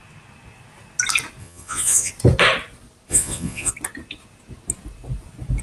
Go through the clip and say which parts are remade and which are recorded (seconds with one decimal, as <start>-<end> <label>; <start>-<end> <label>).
0.0-1.4 recorded; 1.4-2.1 remade; 2.1-3.1 recorded; 3.1-3.7 remade; 3.7-5.6 recorded